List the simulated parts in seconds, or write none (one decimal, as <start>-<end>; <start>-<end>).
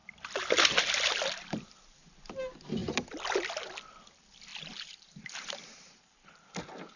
4.5-6.5